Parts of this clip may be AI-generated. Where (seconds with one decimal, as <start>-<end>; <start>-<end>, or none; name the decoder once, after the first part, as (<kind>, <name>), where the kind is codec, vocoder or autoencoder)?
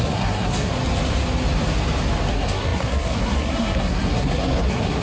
0.0-0.7 (codec, SNAC); 2.3-5.0